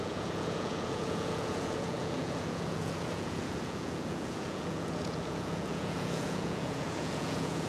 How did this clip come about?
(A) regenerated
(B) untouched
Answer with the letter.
A